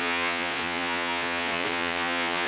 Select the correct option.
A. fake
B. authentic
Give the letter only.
A